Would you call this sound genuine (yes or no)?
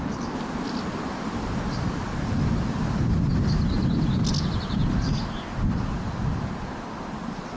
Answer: yes